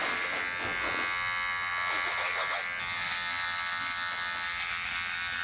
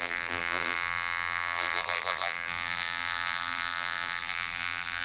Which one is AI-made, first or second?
second